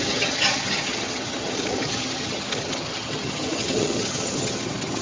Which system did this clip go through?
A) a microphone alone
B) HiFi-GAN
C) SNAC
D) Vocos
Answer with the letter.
B